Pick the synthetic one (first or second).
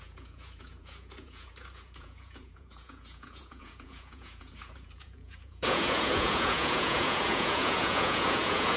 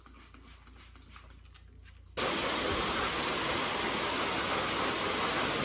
first